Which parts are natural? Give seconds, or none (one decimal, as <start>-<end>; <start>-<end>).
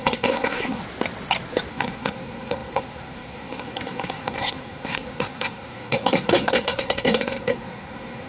0.8-1.7